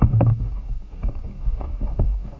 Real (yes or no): no